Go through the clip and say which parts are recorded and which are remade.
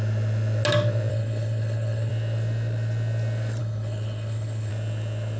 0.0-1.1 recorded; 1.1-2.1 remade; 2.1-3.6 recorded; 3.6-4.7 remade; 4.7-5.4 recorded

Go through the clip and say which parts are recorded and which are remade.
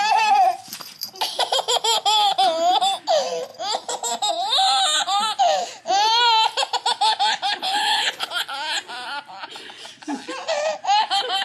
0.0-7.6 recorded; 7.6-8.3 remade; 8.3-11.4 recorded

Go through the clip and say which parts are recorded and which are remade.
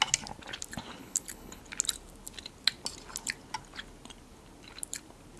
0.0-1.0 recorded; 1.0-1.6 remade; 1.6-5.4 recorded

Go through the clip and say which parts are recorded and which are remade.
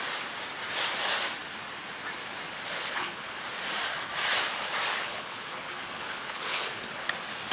0.0-2.7 recorded; 2.7-3.4 remade; 3.4-4.9 recorded; 4.9-7.1 remade; 7.1-7.5 recorded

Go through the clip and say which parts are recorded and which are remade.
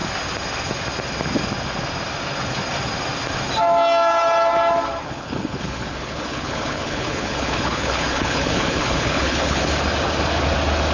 0.0-5.0 recorded; 5.0-9.6 remade; 9.6-10.9 recorded